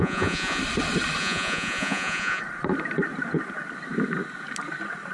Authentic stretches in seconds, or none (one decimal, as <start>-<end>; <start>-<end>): 0.6-1.2; 2.4-5.1